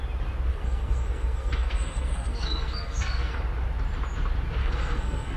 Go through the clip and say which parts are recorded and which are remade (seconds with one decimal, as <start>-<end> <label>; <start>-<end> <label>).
0.0-0.5 recorded; 0.5-3.4 remade; 3.4-4.6 recorded; 4.6-5.4 remade